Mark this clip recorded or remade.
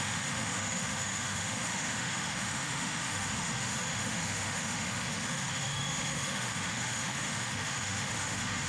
remade